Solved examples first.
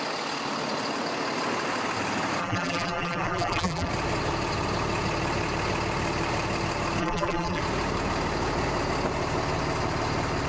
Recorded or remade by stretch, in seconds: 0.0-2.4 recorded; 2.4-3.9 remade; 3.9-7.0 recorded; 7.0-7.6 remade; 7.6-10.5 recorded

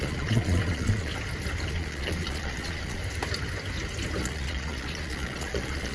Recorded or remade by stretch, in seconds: 0.0-1.1 remade; 1.1-1.7 recorded; 1.7-3.0 remade; 3.0-4.2 recorded; 4.2-5.9 remade